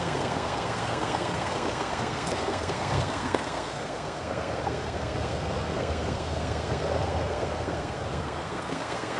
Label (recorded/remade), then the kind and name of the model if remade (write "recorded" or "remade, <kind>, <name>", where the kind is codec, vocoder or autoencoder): remade, codec, SNAC